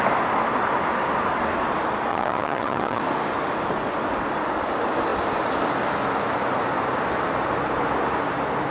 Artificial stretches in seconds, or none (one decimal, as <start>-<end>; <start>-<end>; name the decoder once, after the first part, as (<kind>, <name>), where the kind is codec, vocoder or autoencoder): 2.1-3.0 (vocoder, HiFi-GAN)